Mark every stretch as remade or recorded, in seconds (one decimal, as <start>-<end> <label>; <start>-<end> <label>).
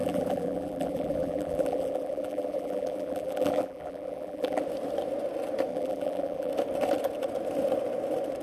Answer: 0.0-4.6 remade; 4.6-5.7 recorded; 5.7-6.5 remade; 6.5-8.4 recorded